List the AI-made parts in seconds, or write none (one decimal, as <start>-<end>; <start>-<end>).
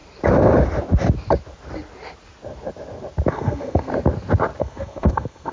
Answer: 3.3-3.9; 4.6-5.5